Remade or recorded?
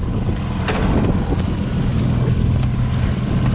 recorded